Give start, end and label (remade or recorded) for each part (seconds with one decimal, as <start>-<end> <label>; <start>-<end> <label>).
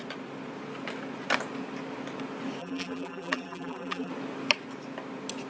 0.0-2.6 recorded; 2.6-4.1 remade; 4.1-5.5 recorded